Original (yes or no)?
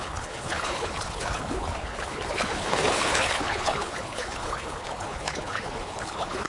no